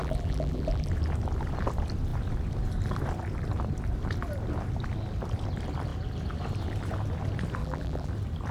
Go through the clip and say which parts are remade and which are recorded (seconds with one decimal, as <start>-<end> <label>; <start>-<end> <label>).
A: 0.0-0.9 remade; 0.9-7.6 recorded; 7.6-8.1 remade; 8.1-8.5 recorded